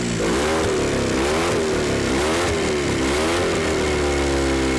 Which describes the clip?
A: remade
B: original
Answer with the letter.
B